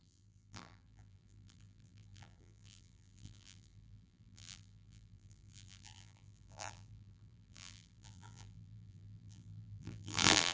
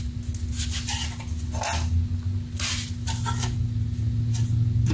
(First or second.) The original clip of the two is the second